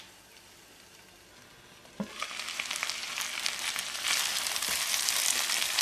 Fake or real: fake